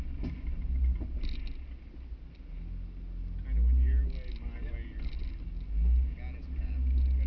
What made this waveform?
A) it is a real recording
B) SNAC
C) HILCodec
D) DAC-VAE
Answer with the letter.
A